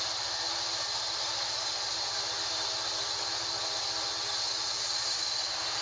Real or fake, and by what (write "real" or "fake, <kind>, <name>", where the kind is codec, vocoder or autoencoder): real